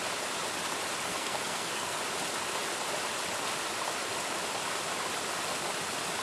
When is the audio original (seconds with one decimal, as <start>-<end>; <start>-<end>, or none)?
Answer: 0.0-1.1; 2.0-6.2